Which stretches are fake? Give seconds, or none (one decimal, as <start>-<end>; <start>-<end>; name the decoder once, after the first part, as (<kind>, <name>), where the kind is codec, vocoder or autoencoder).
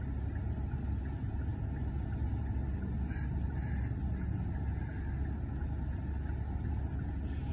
none